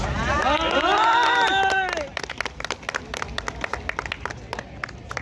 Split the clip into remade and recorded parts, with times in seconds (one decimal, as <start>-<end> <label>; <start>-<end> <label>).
0.0-5.2 recorded